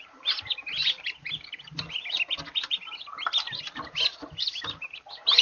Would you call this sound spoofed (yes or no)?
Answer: no